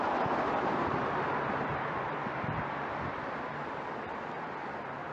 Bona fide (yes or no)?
no